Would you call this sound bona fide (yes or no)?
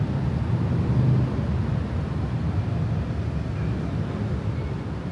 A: yes